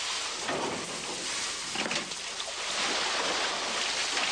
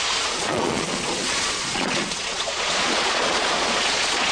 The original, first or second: first